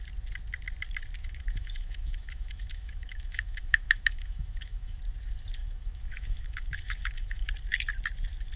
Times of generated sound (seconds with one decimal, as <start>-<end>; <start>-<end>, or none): 1.2-5.0; 5.6-7.5